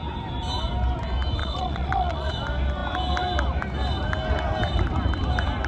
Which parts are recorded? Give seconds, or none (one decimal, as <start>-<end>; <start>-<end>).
0.0-1.4; 2.3-5.7